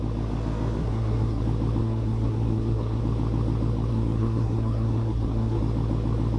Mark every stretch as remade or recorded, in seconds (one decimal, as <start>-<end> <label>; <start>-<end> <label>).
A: 0.0-0.8 recorded; 0.8-1.4 remade; 1.4-1.8 recorded; 1.8-3.0 remade; 3.0-3.9 recorded; 3.9-5.6 remade; 5.6-6.4 recorded